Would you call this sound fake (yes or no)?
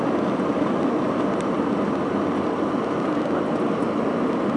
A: yes